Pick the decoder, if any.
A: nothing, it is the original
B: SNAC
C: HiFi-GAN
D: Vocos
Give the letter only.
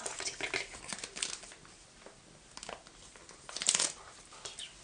A